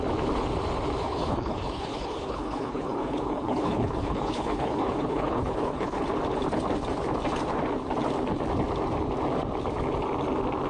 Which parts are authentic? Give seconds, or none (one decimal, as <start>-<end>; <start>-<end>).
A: 0.0-1.0; 6.0-10.7